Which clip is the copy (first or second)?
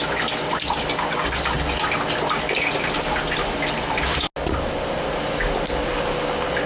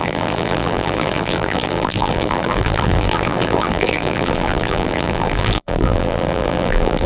second